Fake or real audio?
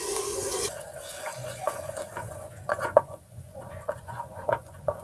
fake